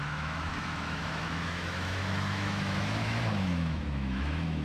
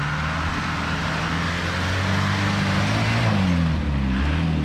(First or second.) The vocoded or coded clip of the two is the first